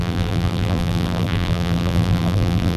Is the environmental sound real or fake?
fake